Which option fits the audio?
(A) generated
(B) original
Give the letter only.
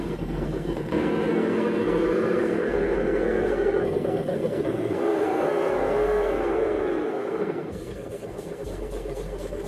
A